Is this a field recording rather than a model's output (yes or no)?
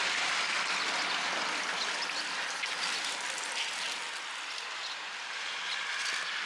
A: yes